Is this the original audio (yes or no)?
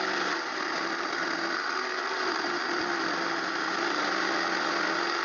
yes